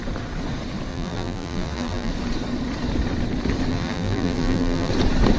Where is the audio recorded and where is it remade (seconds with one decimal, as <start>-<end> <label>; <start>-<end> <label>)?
0.0-0.9 recorded; 0.9-2.1 remade; 2.1-3.7 recorded; 3.7-4.9 remade; 4.9-5.4 recorded